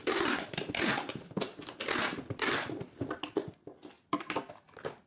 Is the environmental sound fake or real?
real